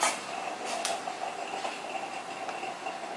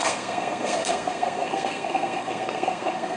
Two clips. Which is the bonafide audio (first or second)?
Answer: first